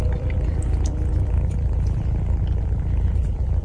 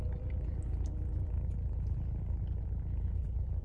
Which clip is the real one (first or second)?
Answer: second